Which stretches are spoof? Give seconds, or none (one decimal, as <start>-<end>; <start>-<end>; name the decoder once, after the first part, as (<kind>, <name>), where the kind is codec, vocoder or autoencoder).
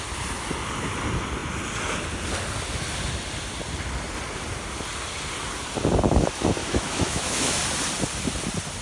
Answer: 6.6-7.6 (autoencoder, DAC-VAE)